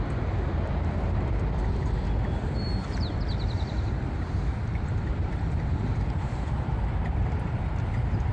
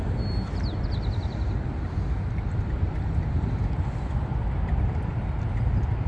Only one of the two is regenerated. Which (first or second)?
first